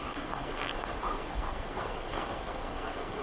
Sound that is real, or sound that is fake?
fake